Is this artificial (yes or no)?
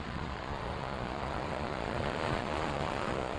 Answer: yes